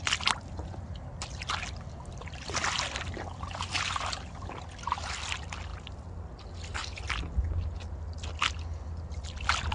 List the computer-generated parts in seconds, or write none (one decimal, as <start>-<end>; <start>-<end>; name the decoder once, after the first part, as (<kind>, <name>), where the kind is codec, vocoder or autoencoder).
none